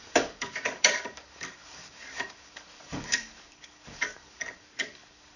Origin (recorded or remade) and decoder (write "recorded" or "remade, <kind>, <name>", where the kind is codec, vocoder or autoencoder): remade, codec, DAC